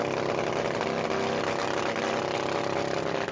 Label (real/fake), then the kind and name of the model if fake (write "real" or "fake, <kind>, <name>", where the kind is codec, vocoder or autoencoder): real